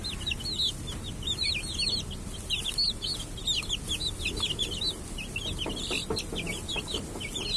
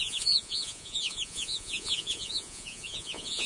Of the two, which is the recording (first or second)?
first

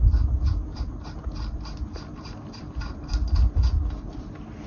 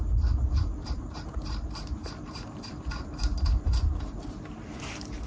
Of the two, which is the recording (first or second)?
first